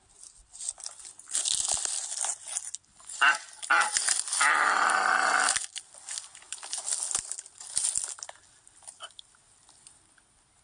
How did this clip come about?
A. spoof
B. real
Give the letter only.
B